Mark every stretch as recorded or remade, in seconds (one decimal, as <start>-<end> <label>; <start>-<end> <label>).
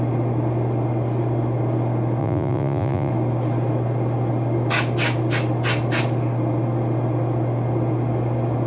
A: 0.0-2.2 recorded; 2.2-3.1 remade; 3.1-8.7 recorded